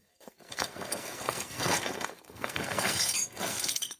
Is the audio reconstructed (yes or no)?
yes